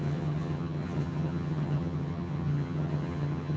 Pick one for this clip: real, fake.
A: fake